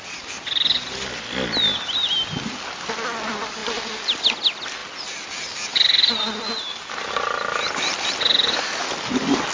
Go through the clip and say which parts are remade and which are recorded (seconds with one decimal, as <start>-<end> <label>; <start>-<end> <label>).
0.0-9.5 recorded